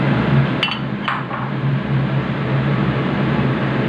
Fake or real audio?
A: real